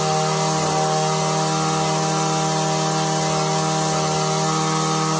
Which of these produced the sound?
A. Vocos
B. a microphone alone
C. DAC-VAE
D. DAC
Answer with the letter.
B